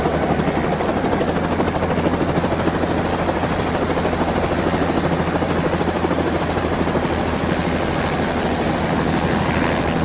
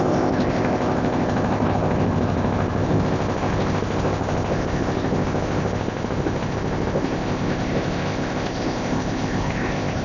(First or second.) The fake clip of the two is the second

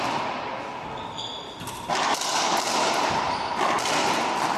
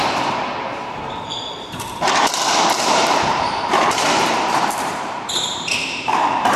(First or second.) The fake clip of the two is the second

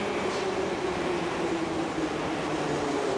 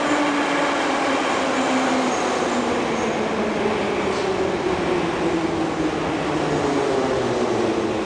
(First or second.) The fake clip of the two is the first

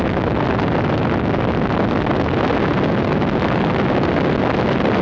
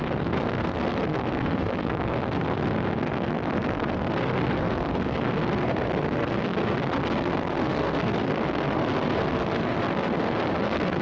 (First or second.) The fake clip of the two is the second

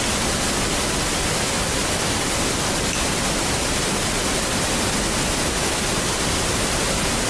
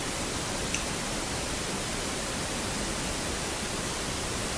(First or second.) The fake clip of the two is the second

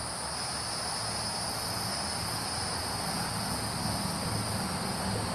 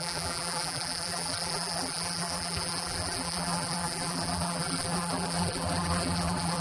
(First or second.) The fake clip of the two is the second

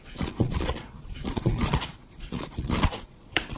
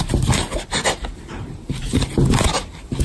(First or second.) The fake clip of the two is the first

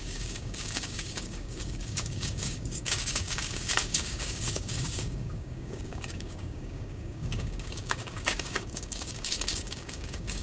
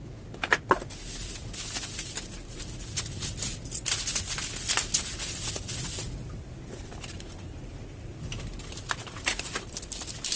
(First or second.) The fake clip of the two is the first